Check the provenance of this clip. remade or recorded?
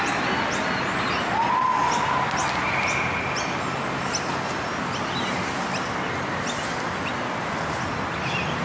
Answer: recorded